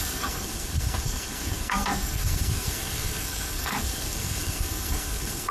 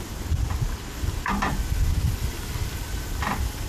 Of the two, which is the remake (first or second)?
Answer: first